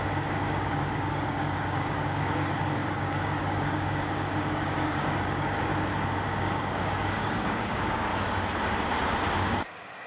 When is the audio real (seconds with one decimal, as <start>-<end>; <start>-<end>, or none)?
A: 5.7-6.4; 8.1-9.4